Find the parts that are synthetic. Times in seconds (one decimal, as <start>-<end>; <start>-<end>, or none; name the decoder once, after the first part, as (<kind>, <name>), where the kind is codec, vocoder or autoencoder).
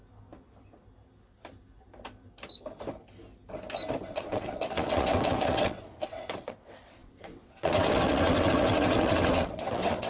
4.1-10.1 (vocoder, WaveNeXt)